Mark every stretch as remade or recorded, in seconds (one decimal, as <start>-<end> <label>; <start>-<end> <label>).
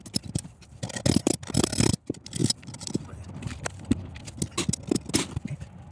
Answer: 0.0-5.9 recorded